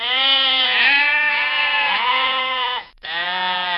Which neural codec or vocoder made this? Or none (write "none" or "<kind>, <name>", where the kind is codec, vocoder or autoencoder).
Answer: vocoder, Vocos